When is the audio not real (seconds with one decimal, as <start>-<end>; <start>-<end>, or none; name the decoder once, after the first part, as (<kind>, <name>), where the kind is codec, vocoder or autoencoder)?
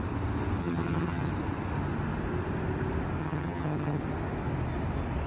0.6-1.3 (vocoder, HiFi-GAN); 3.2-4.0